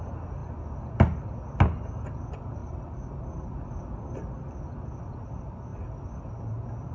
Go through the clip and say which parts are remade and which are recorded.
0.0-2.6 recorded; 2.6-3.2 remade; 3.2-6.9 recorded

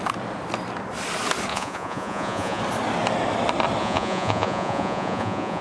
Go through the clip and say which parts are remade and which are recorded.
0.0-1.5 recorded; 1.5-2.6 remade; 2.6-3.8 recorded; 3.8-5.6 remade

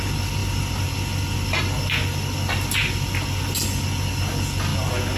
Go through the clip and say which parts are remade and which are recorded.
0.0-5.2 recorded

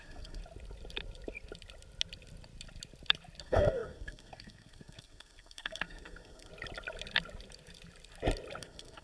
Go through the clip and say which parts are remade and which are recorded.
0.0-0.4 remade; 0.4-3.4 recorded; 3.4-6.5 remade; 6.5-8.6 recorded; 8.6-9.0 remade

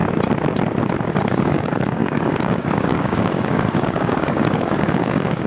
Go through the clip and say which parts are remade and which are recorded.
0.0-1.1 recorded; 1.1-5.5 remade

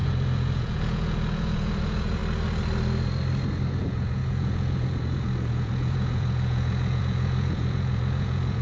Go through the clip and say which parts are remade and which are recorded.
0.0-2.2 remade; 2.2-3.8 recorded; 3.8-8.6 remade